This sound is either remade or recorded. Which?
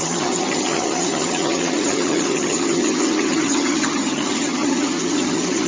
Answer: remade